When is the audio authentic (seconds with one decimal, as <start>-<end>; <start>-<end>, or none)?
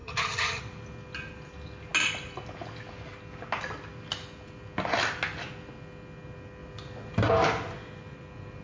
0.6-8.6